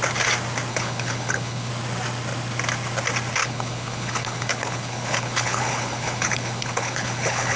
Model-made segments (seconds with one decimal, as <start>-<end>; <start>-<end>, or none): 0.7-1.7; 3.4-7.6